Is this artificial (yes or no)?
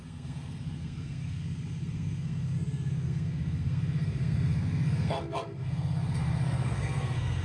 yes